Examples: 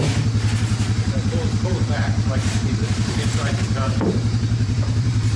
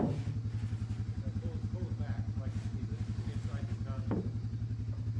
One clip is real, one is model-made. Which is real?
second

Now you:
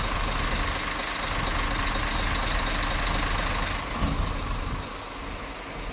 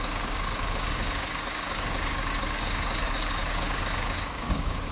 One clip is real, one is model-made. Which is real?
first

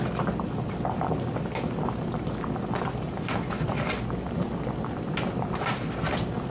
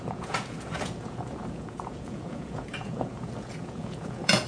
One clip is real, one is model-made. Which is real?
first